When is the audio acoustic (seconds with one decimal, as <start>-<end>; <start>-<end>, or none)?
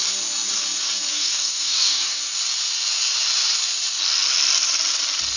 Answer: 0.0-1.1; 2.2-5.4